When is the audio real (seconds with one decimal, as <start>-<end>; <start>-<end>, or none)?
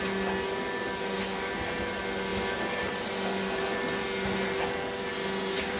0.0-5.8